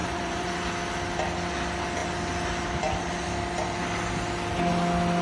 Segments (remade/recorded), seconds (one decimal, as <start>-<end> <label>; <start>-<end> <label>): 0.0-0.5 remade; 0.5-5.2 recorded